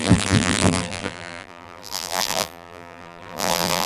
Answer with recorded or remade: remade